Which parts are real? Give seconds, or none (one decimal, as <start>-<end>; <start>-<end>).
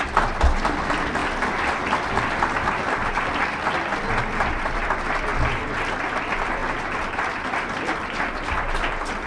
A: 1.2-4.2; 5.3-6.1; 6.6-7.1